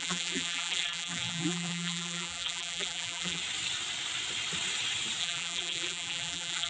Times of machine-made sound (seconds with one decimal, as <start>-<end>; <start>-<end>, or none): 0.0-3.4; 5.2-6.7